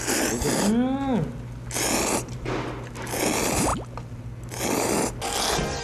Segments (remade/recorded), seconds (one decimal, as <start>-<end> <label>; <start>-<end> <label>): 0.0-5.8 recorded